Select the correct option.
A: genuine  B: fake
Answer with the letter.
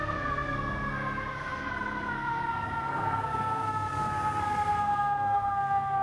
B